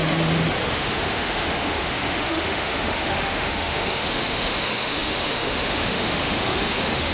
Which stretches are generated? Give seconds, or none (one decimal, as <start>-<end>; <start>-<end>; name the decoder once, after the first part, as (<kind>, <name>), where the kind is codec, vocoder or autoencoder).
0.7-7.1 (autoencoder, DAC-VAE)